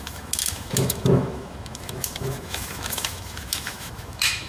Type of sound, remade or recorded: remade